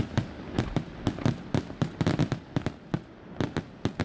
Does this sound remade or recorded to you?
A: recorded